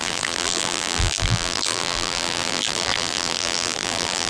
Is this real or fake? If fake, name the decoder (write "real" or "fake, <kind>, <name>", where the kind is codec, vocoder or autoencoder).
fake, vocoder, BigVGAN v2